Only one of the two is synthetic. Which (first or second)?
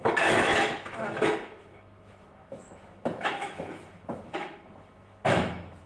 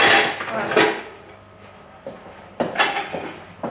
first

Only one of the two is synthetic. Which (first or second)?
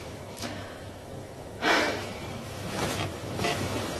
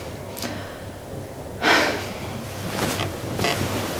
first